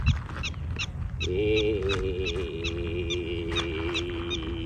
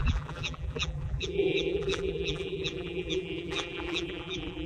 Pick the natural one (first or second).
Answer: first